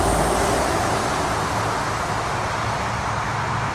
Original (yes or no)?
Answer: yes